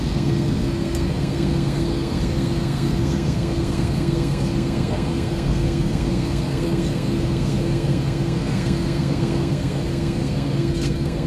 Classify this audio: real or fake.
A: fake